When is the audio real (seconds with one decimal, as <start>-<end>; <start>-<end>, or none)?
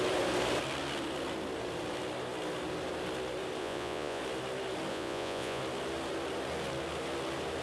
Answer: 0.0-3.6; 4.2-4.9; 5.6-7.6